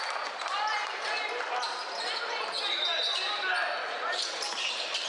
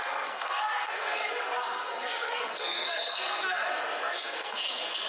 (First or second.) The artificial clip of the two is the second